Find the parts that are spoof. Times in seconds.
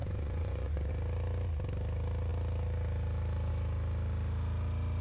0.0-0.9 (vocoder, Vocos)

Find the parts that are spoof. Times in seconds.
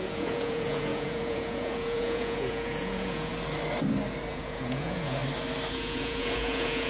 0.0-3.3 (vocoder, Vocos); 4.3-5.2; 5.7-6.9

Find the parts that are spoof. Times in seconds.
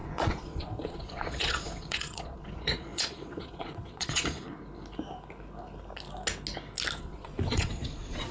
0.0-4.4 (vocoder, Vocos); 7.0-8.3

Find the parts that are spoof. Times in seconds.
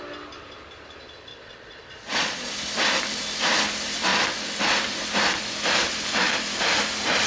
1.3-2.5 (vocoder, Vocos)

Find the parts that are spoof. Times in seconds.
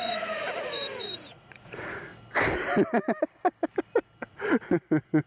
0.0-2.1 (vocoder, Vocos); 4.3-5.3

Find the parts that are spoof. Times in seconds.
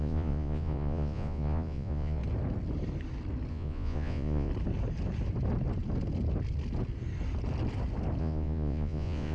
0.0-2.2 (vocoder, Vocos); 3.5-4.5; 8.2-9.3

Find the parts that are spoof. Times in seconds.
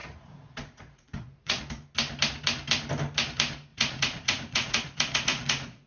0.0-1.6 (vocoder, Vocos); 3.7-5.9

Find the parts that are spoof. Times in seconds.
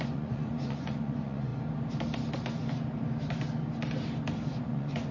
0.0-1.5 (vocoder, Vocos); 4.6-5.1